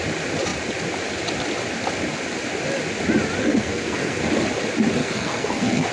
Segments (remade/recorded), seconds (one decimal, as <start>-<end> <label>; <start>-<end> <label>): 0.0-3.4 recorded; 3.4-4.2 remade; 4.2-5.0 recorded; 5.0-5.9 remade